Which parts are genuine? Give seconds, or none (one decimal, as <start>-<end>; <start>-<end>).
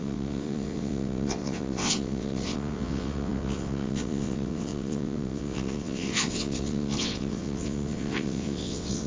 none